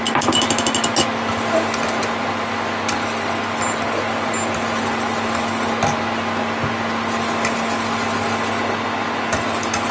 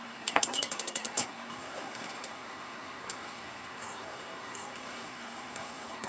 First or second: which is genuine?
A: first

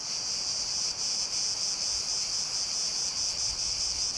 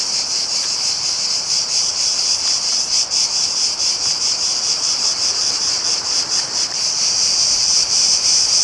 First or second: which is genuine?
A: first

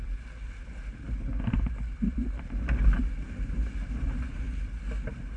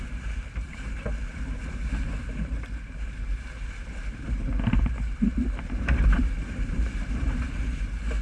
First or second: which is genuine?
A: first